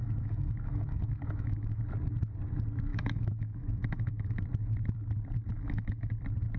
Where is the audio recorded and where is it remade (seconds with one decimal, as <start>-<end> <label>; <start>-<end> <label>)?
0.0-1.8 remade; 1.8-2.9 recorded; 2.9-4.4 remade; 4.4-5.5 recorded; 5.5-6.1 remade; 6.1-6.6 recorded